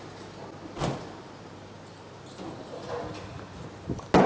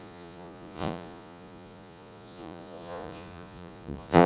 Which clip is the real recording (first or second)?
first